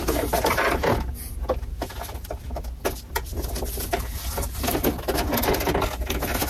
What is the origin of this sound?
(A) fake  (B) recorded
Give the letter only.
B